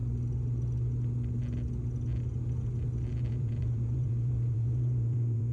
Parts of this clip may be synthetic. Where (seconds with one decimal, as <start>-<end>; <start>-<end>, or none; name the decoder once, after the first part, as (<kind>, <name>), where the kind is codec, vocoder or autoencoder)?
3.3-5.5 (vocoder, Vocos)